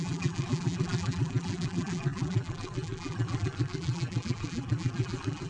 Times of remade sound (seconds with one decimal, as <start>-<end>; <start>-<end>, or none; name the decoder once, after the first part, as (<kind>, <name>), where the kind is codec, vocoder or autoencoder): 0.0-5.5 (vocoder, BigVGAN v2)